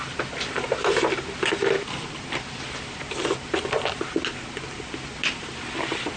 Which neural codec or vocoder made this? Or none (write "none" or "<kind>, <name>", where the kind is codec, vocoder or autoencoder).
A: none